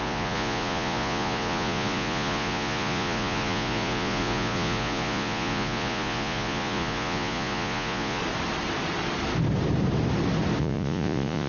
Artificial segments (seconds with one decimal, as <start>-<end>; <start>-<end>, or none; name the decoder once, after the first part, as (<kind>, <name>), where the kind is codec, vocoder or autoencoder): 0.0-8.2 (vocoder, Vocos); 10.6-11.5